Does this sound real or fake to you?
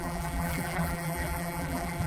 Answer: fake